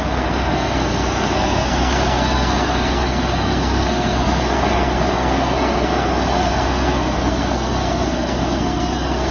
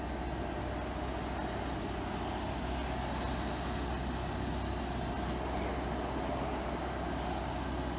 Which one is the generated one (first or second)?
first